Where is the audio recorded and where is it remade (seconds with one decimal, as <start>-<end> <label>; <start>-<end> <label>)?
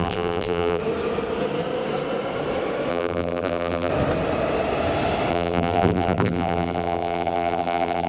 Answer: 0.0-0.8 remade; 0.8-2.9 recorded; 2.9-3.9 remade; 3.9-5.3 recorded; 5.3-8.1 remade